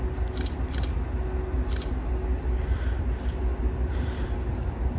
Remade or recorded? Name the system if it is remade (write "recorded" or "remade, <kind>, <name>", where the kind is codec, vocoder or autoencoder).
recorded